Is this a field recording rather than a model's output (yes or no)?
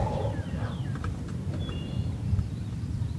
no